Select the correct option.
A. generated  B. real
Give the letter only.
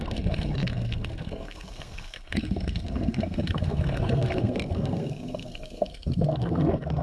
A